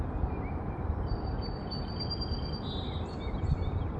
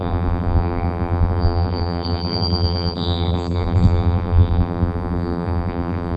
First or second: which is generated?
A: second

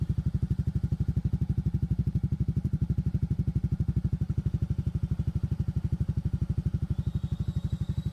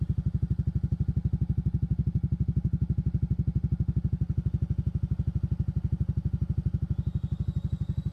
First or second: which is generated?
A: first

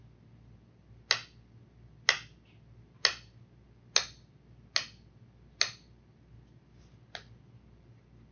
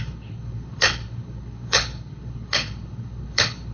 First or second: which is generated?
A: second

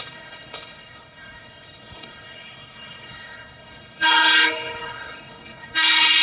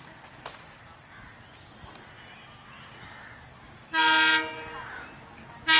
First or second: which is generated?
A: first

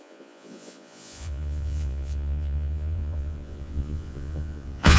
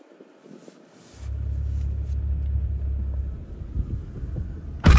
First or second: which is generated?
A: first